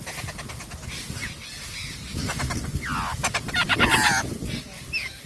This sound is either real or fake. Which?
real